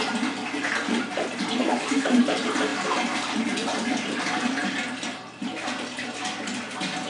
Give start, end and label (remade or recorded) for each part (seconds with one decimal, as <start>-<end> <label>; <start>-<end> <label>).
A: 0.0-1.6 recorded; 1.6-2.2 remade; 2.2-7.1 recorded